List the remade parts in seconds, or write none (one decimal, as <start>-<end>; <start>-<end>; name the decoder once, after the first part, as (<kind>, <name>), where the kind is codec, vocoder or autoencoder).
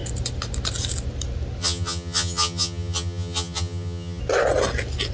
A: 1.6-4.2 (vocoder, HiFi-GAN)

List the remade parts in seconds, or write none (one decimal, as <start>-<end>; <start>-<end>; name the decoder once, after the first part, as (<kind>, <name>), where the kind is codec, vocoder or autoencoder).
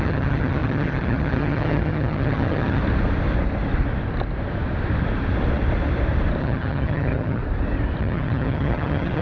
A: 0.0-2.8 (vocoder, HiFi-GAN); 6.4-7.4; 8.0-9.2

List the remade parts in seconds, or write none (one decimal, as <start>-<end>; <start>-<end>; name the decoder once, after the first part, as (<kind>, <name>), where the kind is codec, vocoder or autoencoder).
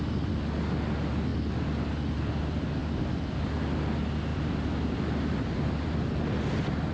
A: 2.8-3.4 (vocoder, BigVGAN v2); 4.3-6.2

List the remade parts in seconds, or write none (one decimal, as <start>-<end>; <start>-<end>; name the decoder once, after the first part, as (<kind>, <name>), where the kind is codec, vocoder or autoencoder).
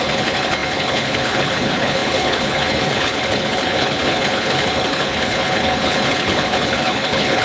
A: 0.0-7.4 (codec, HILCodec)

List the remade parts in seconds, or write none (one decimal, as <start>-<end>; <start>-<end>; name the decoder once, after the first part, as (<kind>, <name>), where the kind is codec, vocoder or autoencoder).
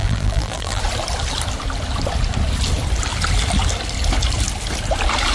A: 0.0-0.8 (vocoder, BigVGAN v2)